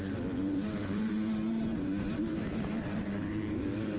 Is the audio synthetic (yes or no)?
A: yes